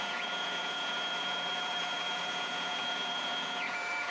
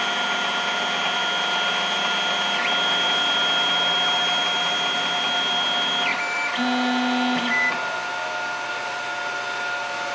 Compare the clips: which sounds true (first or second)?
second